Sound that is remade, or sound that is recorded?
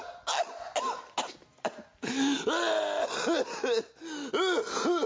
recorded